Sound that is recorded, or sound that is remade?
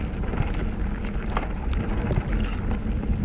recorded